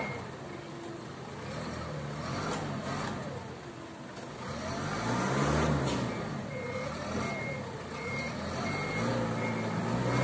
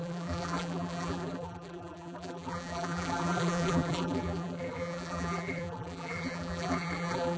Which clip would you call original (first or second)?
first